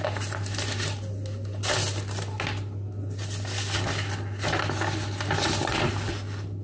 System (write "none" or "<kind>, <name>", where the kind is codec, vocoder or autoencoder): none